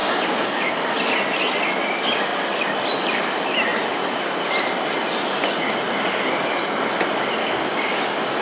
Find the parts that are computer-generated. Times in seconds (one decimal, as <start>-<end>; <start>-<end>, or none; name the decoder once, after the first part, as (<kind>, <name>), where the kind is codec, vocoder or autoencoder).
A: 0.0-0.9 (codec, DAC); 7.4-8.4